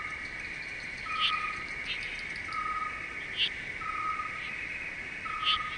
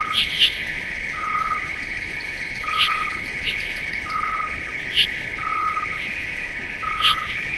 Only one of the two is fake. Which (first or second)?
second